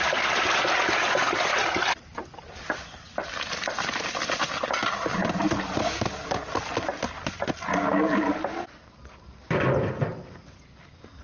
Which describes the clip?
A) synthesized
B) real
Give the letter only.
B